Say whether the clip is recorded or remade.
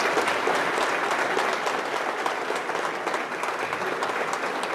recorded